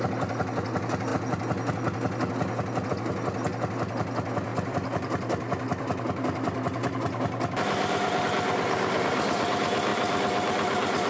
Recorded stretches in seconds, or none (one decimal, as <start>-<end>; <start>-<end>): 0.0-4.5; 8.2-9.9